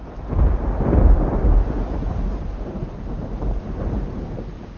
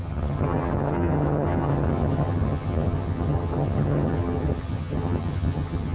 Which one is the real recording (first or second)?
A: first